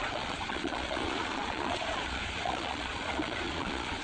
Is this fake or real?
fake